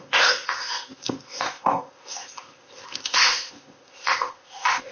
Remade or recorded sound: remade